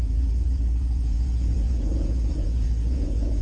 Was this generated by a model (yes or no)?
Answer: yes